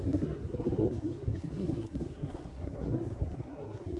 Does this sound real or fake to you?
fake